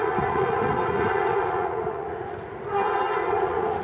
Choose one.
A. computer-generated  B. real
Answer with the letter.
A